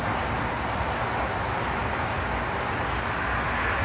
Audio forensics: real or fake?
real